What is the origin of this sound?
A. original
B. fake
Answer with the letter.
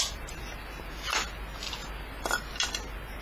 A